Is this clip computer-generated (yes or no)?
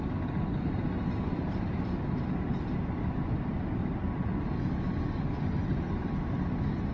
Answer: no